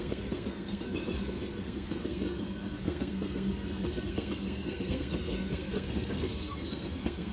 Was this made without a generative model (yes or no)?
no